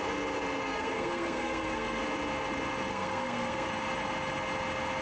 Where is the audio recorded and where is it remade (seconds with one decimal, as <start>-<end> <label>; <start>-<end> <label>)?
0.0-0.6 recorded; 0.6-2.0 remade; 2.0-2.9 recorded; 2.9-3.7 remade; 3.7-5.0 recorded